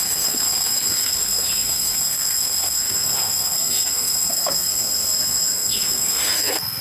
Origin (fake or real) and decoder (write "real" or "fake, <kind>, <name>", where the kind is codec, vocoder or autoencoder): fake, codec, SNAC